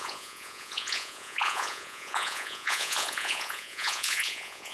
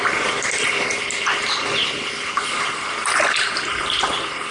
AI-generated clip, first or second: first